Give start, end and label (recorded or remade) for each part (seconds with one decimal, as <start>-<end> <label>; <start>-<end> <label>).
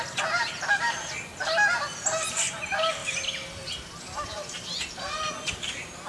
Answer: 0.0-6.1 recorded